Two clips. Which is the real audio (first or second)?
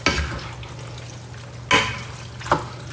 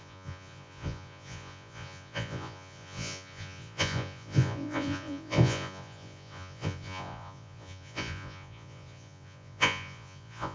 first